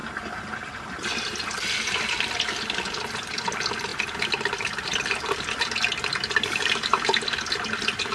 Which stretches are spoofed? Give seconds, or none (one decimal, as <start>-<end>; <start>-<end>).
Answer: 3.9-5.2